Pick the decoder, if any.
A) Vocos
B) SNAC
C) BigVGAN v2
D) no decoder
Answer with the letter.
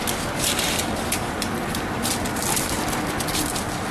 C